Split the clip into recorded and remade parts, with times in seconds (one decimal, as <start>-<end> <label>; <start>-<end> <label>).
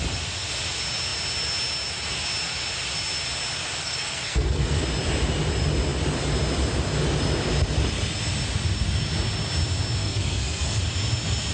0.0-3.8 recorded; 3.8-4.8 remade; 4.8-10.0 recorded; 10.0-10.8 remade; 10.8-11.5 recorded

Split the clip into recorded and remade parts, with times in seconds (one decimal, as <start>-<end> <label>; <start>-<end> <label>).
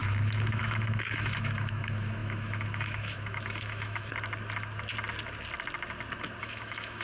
0.0-4.1 remade; 4.1-6.4 recorded; 6.4-7.0 remade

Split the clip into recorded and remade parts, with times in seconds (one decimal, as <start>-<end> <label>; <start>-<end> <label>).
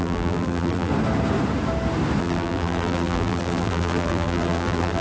0.0-0.9 remade; 0.9-2.2 recorded; 2.2-5.0 remade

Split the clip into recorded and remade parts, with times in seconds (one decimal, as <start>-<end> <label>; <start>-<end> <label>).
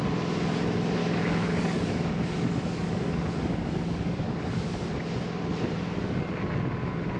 0.0-1.0 recorded; 1.0-4.9 remade; 4.9-7.2 recorded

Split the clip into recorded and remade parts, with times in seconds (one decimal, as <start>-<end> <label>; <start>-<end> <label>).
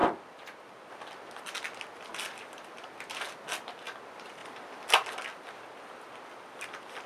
0.0-7.1 recorded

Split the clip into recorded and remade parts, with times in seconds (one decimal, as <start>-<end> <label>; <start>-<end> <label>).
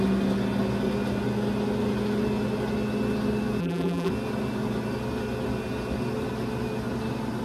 0.0-3.6 recorded; 3.6-4.1 remade; 4.1-7.4 recorded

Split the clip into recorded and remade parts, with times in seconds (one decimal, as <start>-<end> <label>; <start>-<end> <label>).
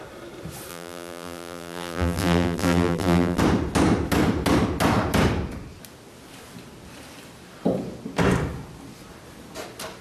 0.0-0.7 recorded; 0.7-3.4 remade; 3.4-10.0 recorded